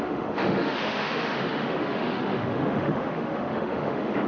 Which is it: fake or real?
fake